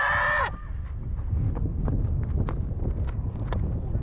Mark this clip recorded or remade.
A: recorded